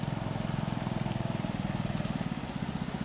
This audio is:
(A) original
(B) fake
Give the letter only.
A